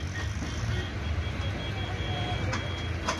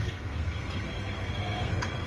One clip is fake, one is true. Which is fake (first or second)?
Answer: second